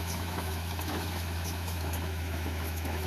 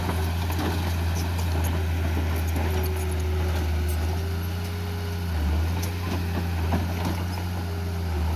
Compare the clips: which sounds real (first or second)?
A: second